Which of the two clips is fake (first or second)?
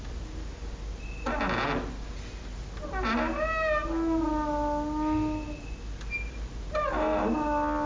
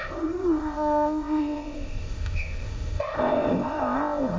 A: second